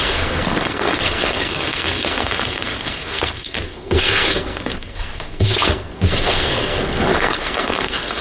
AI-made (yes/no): yes